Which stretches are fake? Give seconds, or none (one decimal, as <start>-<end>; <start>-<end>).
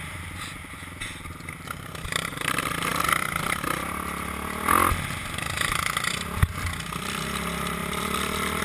7.8-8.6